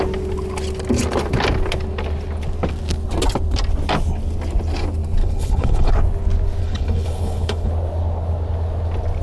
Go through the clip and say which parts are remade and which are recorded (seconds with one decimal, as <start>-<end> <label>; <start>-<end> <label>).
0.0-5.2 recorded; 5.2-5.9 remade; 5.9-6.6 recorded; 6.6-7.7 remade; 7.7-9.2 recorded